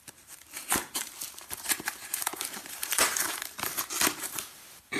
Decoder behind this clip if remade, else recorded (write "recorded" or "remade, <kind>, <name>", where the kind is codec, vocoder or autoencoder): remade, vocoder, BigVGAN v2